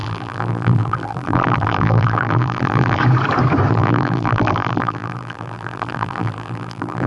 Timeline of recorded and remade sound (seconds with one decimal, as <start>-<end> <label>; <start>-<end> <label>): 0.0-3.0 remade; 3.0-3.7 recorded; 3.7-7.1 remade